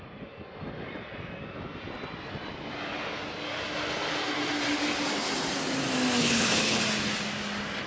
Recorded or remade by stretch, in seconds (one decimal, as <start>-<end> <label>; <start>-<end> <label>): 0.0-6.2 recorded; 6.2-6.8 remade; 6.8-7.9 recorded